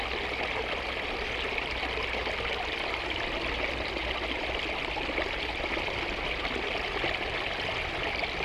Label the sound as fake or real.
real